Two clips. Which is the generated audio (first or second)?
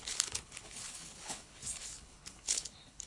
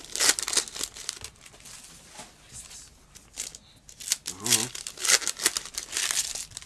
first